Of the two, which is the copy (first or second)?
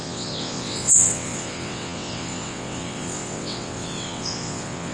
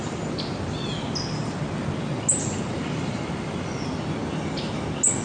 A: first